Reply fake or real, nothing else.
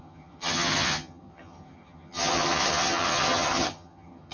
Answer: fake